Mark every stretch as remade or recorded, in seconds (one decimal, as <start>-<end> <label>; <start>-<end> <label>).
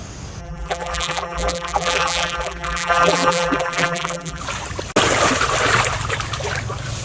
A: 0.0-0.4 recorded; 0.4-4.4 remade; 4.4-7.0 recorded